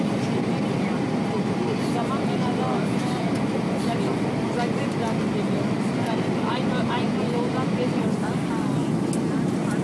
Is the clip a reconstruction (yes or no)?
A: no